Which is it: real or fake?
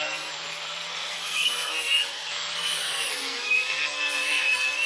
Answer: fake